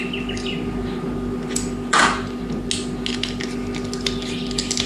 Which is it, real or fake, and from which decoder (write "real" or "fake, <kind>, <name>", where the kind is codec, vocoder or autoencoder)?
real